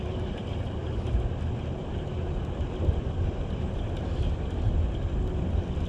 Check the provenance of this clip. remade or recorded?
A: recorded